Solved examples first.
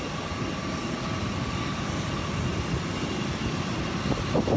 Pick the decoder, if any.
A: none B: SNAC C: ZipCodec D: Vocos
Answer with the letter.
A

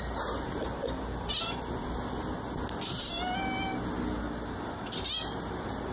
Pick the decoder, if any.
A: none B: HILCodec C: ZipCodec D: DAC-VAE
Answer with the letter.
A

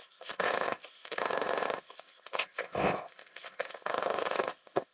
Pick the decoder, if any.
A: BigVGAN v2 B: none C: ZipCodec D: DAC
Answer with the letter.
C